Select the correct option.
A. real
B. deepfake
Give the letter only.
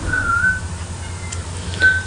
A